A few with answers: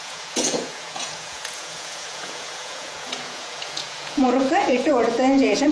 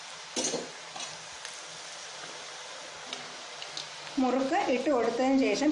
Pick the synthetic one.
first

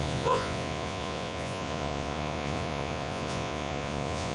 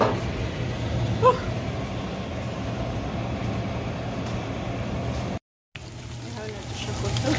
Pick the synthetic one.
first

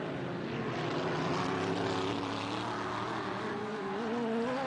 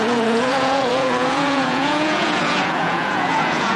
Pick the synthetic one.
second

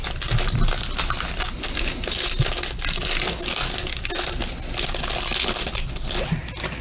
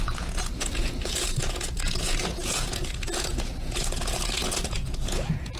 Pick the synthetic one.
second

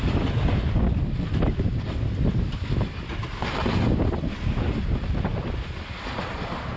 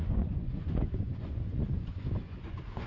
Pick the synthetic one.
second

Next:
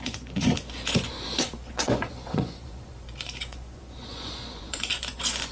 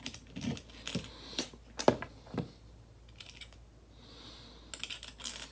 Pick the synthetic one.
first